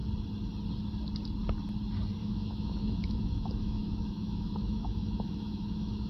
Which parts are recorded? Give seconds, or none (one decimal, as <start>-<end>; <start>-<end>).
0.0-2.2